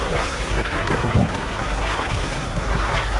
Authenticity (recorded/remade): remade